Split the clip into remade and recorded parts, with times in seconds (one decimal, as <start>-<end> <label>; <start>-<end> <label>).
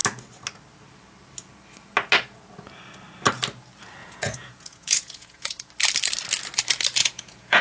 0.0-4.0 recorded; 4.0-5.7 remade; 5.7-7.0 recorded; 7.0-7.6 remade